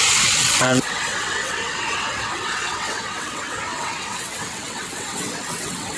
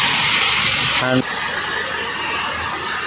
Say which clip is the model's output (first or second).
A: first